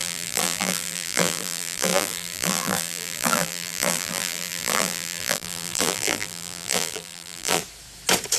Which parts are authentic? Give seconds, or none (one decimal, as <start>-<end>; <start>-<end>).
7.6-8.4